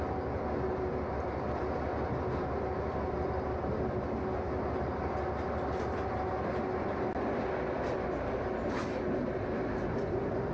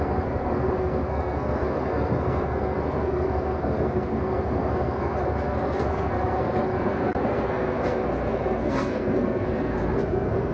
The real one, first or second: first